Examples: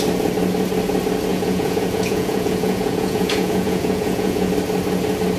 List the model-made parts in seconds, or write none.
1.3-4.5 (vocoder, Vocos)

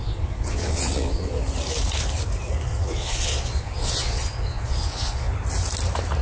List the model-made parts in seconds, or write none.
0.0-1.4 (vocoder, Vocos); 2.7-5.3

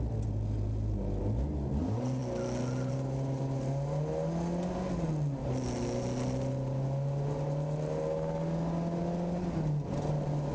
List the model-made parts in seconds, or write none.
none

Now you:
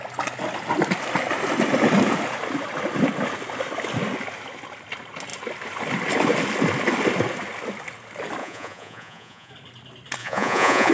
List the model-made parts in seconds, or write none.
8.4-9.5 (vocoder, Vocos); 10.2-10.9